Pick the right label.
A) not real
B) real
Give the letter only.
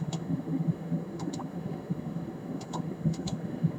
A